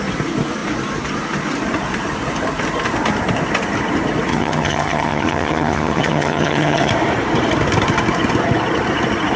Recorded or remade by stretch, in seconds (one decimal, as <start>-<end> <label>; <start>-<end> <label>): 0.0-4.3 recorded; 4.3-6.9 remade; 6.9-9.4 recorded